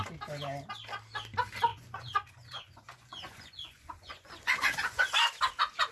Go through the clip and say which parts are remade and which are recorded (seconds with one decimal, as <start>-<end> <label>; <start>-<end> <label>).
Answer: 0.0-1.7 recorded; 1.7-5.2 remade; 5.2-5.9 recorded